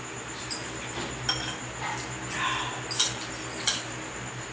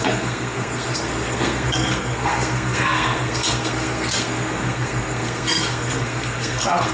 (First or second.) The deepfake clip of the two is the second